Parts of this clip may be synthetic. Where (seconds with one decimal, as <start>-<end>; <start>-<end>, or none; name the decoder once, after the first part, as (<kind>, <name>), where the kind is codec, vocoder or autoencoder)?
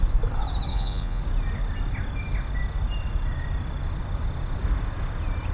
0.7-1.2 (vocoder, Vocos)